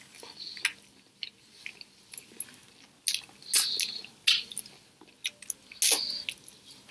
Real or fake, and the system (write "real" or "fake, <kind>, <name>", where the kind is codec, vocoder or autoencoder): real